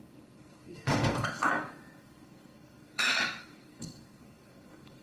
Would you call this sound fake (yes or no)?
yes